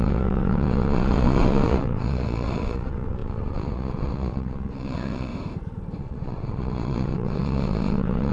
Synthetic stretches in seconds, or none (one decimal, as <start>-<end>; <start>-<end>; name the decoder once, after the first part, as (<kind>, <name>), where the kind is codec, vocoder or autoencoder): 0.0-5.3 (vocoder, WaveNeXt); 6.0-8.3